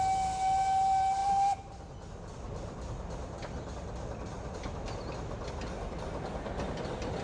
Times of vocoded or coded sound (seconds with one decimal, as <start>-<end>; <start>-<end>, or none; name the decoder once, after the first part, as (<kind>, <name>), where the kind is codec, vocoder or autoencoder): none